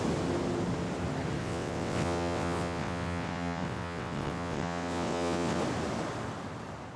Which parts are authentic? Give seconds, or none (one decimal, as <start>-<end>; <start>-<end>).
0.0-1.4; 5.6-7.0

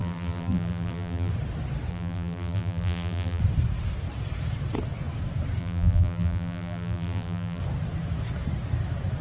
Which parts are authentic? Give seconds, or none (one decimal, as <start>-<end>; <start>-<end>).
1.3-1.9; 3.4-5.6; 7.6-9.2

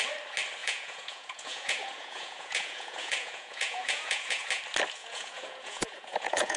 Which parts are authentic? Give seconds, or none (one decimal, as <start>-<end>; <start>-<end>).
0.0-0.6; 4.6-5.0

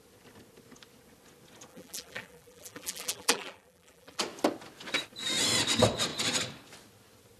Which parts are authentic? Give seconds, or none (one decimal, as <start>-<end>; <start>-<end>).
0.0-1.7; 4.2-7.4

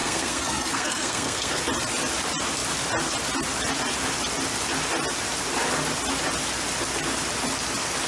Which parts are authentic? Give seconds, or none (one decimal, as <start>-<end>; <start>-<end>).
1.6-8.1

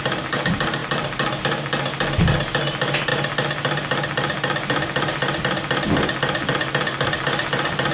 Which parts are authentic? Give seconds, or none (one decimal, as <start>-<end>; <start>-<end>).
0.0-7.9

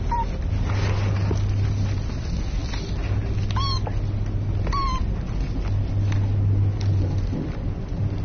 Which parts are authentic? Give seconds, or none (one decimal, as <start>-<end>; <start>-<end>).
0.0-8.2

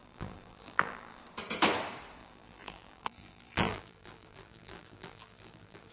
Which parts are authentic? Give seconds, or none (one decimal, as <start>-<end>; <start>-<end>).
1.2-2.2